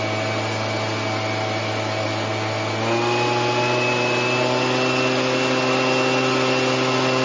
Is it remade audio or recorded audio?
recorded